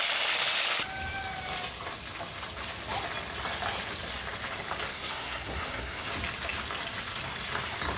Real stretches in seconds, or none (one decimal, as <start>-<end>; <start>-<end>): 0.0-4.9; 6.1-8.0